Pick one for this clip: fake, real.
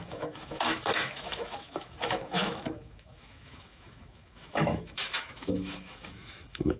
fake